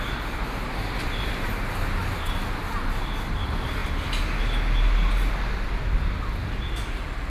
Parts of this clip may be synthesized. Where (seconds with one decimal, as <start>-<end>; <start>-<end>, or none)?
none